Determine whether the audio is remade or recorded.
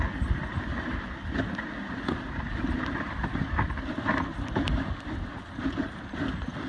recorded